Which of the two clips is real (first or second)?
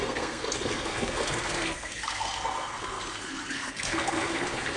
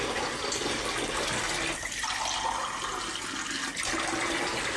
second